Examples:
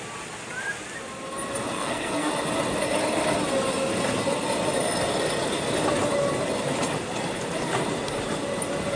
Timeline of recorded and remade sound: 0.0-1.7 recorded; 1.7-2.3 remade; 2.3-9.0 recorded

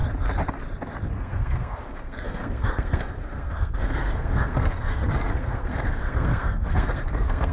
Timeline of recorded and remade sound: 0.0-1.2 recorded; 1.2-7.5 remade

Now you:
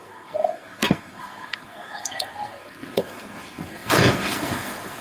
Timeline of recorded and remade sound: 0.0-5.0 remade

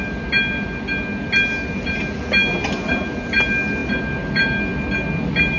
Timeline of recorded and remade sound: 0.0-5.6 recorded